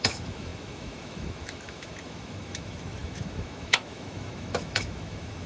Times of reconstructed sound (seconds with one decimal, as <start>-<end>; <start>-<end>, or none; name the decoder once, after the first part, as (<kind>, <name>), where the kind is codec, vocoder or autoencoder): 0.0-5.5 (autoencoder, DAC-VAE)